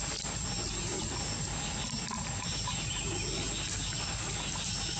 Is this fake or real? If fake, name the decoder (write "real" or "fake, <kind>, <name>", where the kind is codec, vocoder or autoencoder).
real